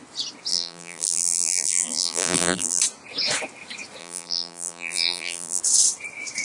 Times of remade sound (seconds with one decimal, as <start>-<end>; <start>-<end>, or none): 0.5-2.8; 4.0-5.6